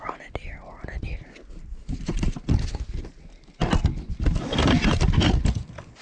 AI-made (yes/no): no